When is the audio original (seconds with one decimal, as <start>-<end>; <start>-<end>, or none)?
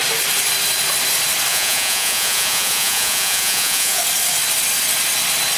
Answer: 0.0-1.5; 4.0-5.6